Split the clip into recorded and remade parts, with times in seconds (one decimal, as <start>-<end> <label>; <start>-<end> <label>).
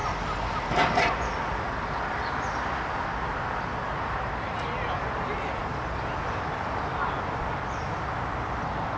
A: 0.0-9.0 recorded